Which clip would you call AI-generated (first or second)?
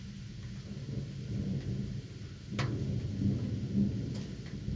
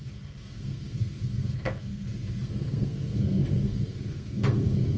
second